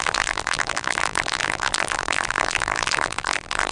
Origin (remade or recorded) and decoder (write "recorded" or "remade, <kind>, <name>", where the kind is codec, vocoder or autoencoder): remade, vocoder, BigVGAN v2